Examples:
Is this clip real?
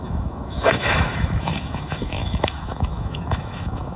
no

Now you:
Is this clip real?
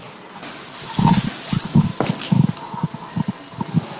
yes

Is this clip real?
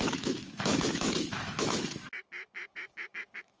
no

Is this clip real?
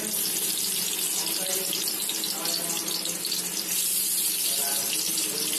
yes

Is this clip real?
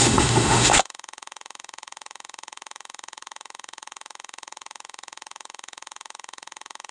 no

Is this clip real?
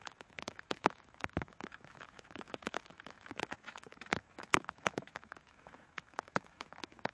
no